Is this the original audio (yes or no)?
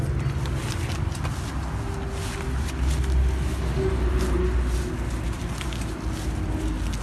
yes